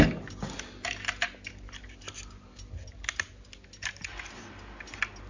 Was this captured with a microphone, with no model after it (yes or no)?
yes